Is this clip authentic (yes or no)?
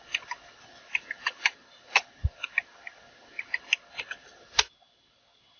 yes